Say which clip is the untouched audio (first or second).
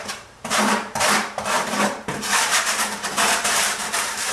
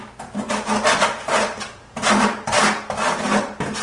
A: second